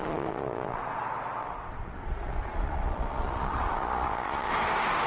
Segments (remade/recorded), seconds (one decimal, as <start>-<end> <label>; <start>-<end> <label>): 0.0-0.8 remade; 0.8-1.4 recorded; 1.4-4.5 remade; 4.5-5.1 recorded